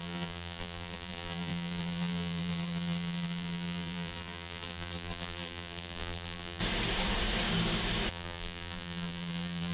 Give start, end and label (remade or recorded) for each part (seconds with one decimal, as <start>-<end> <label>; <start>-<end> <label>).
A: 0.0-6.6 remade; 6.6-8.1 recorded; 8.1-9.7 remade